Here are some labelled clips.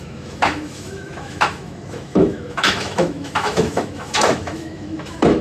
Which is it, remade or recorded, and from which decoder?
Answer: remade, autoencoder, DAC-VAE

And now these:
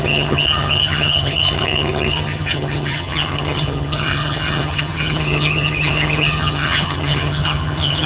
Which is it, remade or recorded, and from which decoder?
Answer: remade, vocoder, HiFi-GAN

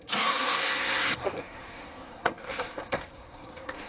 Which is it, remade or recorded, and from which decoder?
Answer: remade, codec, SNAC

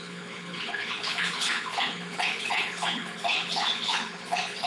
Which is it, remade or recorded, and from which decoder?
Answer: remade, codec, HILCodec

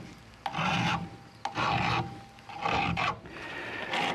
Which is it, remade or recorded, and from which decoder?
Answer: recorded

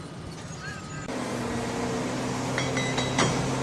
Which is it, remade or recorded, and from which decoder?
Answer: recorded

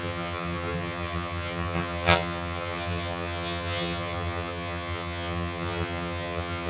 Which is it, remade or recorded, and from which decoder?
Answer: remade, vocoder, HiFi-GAN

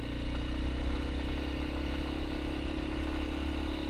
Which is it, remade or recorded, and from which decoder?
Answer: recorded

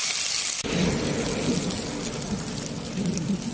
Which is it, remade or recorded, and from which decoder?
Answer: recorded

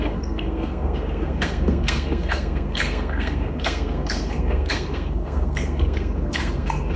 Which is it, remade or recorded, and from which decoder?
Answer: remade, codec, SNAC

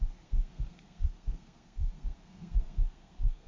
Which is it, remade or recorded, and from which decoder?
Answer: remade, codec, SNAC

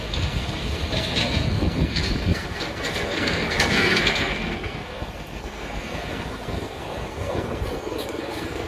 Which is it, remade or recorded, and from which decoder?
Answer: remade, codec, SNAC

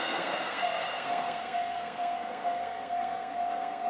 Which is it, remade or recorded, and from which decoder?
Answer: remade, codec, SNAC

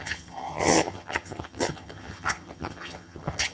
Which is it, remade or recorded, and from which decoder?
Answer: remade, vocoder, HiFi-GAN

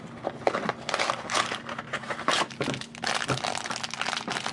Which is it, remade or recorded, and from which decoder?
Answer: recorded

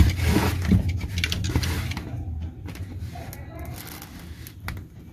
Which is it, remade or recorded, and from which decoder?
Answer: recorded